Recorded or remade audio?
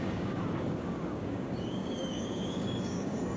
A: remade